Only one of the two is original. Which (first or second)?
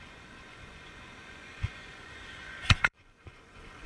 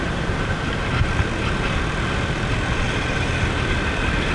second